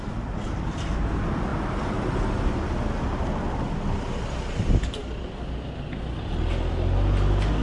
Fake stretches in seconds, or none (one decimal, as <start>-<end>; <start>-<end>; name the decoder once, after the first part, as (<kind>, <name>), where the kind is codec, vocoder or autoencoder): none